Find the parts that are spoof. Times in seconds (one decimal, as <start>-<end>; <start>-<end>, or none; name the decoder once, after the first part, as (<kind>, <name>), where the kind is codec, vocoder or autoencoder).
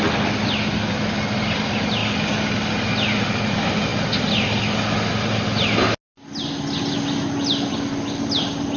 none